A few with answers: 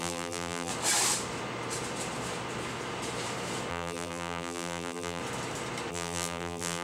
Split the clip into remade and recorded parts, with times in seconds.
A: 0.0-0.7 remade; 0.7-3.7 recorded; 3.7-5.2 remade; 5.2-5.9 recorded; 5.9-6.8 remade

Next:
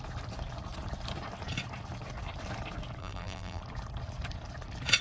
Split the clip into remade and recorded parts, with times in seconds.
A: 0.0-3.0 recorded; 3.0-3.6 remade; 3.6-5.0 recorded

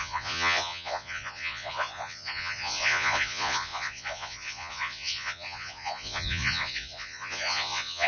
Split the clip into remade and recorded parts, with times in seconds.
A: 0.0-8.1 remade

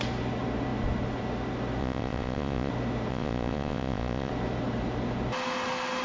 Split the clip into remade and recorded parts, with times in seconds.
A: 0.0-1.8 recorded; 1.8-2.7 remade; 2.7-3.1 recorded; 3.1-4.3 remade; 4.3-6.0 recorded

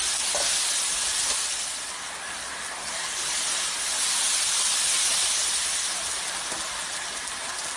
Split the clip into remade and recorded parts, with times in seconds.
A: 0.0-7.8 recorded